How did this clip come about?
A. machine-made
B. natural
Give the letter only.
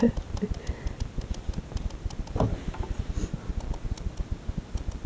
B